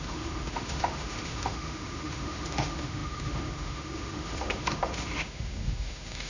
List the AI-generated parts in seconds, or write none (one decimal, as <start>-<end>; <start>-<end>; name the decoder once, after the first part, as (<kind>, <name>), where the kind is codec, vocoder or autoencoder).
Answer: 0.0-6.3 (autoencoder, DAC-VAE)

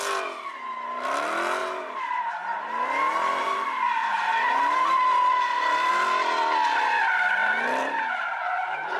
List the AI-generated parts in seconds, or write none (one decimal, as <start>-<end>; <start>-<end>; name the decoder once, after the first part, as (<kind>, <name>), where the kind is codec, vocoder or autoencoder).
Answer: 1.6-2.4 (vocoder, BigVGAN v2); 3.4-5.9; 7.8-9.0

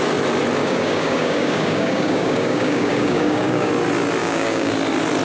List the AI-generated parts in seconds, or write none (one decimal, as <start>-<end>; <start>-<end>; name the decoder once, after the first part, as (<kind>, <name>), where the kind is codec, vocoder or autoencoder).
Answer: 0.6-3.7 (codec, DAC); 4.2-4.7

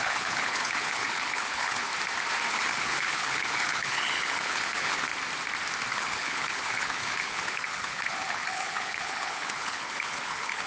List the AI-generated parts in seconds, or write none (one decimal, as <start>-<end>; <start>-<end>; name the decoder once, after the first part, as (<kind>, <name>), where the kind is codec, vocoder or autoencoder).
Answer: 0.0-1.9 (codec, HILCodec); 2.5-5.1; 5.9-10.7

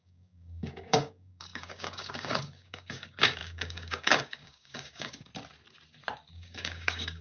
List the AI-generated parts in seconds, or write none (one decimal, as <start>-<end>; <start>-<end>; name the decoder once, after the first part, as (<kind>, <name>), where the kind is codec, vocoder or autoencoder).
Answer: 0.0-5.3 (codec, DAC); 6.3-7.2

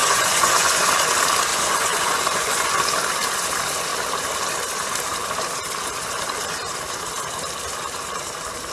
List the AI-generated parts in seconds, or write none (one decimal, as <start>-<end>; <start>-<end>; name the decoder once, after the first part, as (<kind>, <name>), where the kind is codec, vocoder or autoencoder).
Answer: 0.0-0.9 (vocoder, Vocos); 1.5-2.8